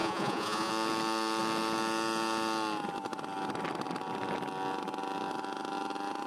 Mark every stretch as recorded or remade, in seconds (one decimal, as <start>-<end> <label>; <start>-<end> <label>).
0.0-0.7 remade; 0.7-6.3 recorded